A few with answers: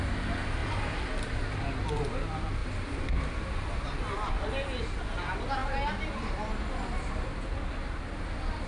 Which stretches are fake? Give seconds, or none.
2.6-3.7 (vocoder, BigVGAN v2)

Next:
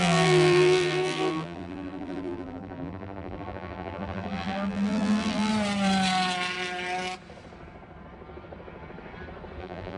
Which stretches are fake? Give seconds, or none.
0.0-5.5 (vocoder, BigVGAN v2); 9.6-10.0

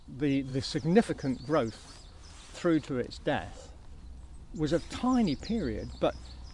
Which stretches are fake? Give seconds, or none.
none

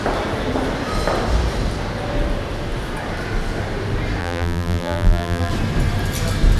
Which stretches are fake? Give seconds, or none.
4.2-5.5 (vocoder, BigVGAN v2)

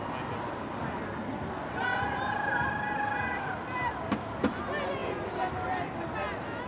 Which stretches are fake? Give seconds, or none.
1.9-4.6 (vocoder, BigVGAN v2); 5.0-6.0